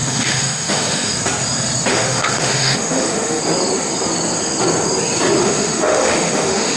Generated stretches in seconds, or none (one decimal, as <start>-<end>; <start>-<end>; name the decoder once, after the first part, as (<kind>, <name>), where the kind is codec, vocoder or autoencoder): 0.0-1.1 (autoencoder, DAC-VAE); 1.9-3.4; 5.4-6.8